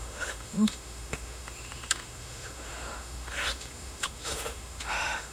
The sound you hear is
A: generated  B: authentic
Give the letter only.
A